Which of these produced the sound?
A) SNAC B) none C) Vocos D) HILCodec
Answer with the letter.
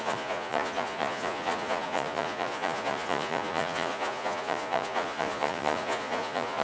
C